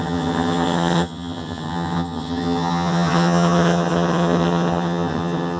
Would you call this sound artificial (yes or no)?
yes